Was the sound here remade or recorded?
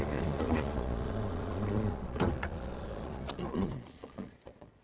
remade